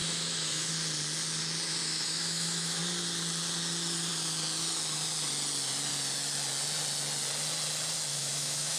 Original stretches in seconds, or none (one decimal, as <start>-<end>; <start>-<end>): 0.7-1.8; 2.8-8.1